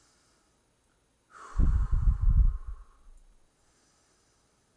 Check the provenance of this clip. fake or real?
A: real